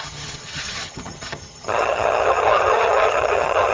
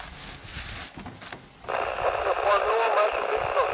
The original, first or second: second